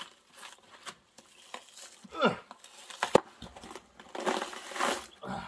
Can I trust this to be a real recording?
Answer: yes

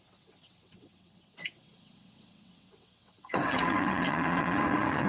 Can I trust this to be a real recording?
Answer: no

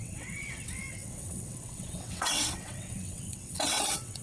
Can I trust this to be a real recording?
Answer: no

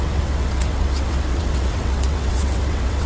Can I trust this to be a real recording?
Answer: no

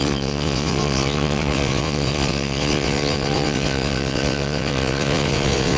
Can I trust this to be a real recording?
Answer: no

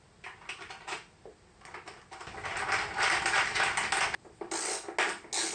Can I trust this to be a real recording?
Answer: yes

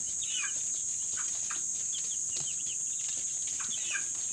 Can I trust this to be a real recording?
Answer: yes